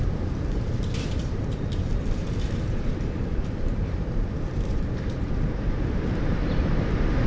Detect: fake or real fake